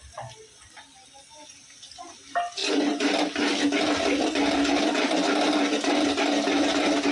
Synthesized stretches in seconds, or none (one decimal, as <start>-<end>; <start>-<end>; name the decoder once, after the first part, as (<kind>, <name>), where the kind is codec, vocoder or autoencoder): none